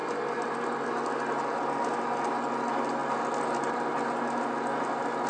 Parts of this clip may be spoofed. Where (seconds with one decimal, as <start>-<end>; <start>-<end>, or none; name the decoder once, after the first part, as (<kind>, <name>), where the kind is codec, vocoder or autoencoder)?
none